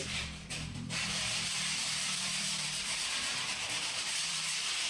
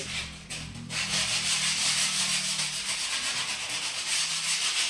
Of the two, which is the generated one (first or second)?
first